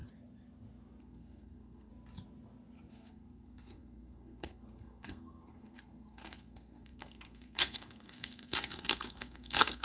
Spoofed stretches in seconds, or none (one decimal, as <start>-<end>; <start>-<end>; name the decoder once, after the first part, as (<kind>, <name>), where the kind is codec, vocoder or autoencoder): 1.0-1.9 (codec, SNAC); 2.9-9.8